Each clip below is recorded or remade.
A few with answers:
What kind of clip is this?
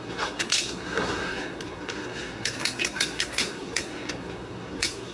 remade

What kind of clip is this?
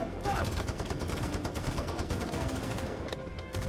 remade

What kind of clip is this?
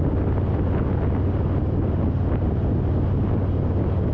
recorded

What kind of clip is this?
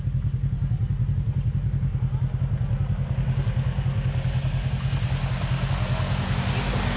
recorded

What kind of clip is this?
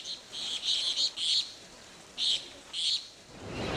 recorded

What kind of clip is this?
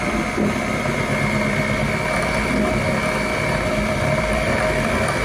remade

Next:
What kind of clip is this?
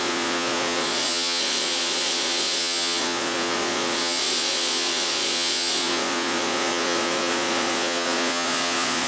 remade